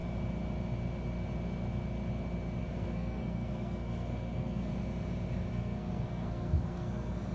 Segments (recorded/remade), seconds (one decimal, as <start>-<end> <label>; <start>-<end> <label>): 0.0-2.6 recorded; 2.6-4.7 remade; 4.7-5.5 recorded; 5.5-7.3 remade